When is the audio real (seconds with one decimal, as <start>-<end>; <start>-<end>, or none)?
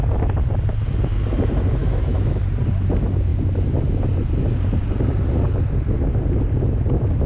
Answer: 0.0-1.8; 2.4-7.3